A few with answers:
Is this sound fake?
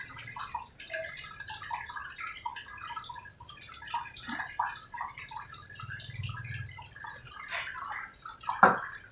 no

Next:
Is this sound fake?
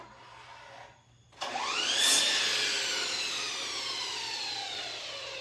no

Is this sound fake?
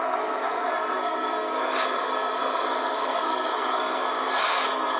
yes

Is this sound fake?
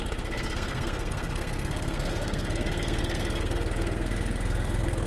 yes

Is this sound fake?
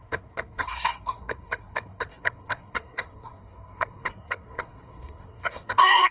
yes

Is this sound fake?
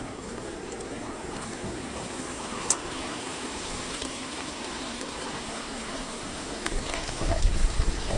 yes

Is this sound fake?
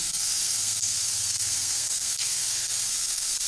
yes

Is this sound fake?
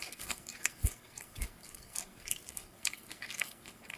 yes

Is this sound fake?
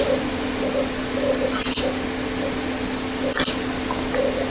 no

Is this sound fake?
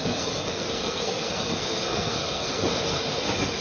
yes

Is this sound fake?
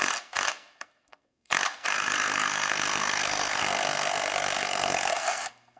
yes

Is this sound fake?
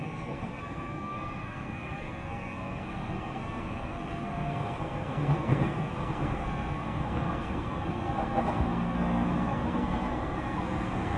yes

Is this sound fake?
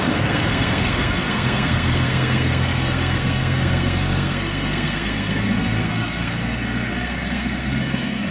yes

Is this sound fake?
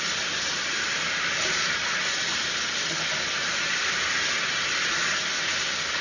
no